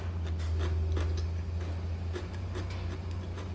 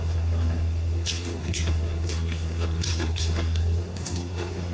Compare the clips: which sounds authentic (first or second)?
first